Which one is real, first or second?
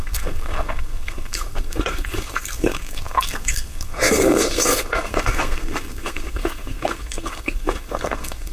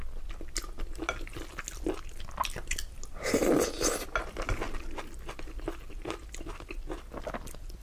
second